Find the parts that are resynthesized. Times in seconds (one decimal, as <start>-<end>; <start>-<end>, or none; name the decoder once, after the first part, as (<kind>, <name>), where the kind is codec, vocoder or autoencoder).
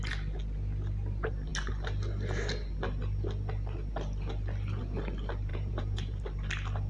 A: 5.5-6.2 (vocoder, Vocos)